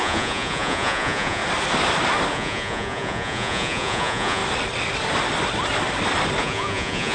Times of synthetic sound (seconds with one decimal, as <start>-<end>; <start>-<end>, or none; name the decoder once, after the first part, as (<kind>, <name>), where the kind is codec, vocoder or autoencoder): 0.0-1.4 (vocoder, Vocos); 2.3-4.4; 6.4-7.1